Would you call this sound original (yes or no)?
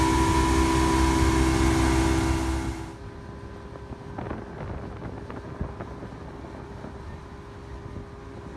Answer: yes